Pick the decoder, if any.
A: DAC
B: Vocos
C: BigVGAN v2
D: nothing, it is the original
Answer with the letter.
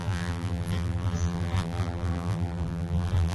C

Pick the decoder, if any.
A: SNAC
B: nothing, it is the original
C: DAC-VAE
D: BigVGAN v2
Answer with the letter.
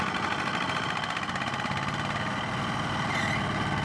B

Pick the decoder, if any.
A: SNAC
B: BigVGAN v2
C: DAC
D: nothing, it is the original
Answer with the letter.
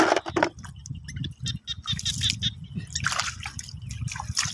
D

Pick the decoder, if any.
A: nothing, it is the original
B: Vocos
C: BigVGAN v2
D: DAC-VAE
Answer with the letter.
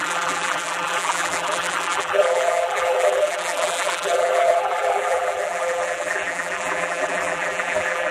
C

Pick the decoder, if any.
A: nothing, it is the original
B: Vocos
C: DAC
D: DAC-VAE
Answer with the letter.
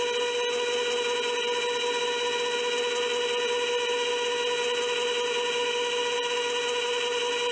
A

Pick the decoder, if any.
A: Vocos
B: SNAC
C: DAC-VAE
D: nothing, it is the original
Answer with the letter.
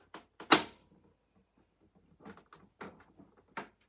D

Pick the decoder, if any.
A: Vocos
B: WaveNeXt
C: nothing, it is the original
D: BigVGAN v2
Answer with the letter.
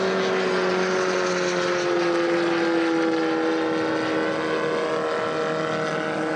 C